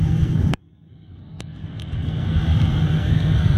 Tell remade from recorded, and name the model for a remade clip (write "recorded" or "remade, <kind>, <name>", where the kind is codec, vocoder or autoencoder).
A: remade, codec, SNAC